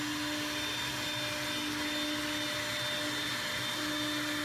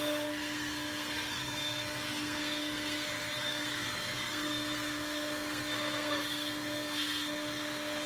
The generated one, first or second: second